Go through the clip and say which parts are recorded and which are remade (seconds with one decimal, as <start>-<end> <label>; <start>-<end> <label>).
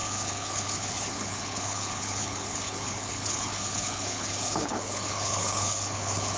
0.0-6.4 remade